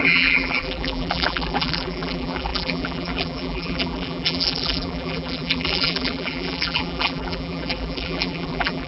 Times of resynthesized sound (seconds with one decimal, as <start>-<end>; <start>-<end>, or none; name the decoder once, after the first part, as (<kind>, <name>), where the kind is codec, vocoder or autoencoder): 0.0-8.9 (vocoder, BigVGAN v2)